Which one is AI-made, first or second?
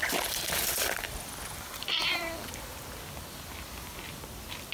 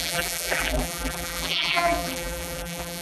second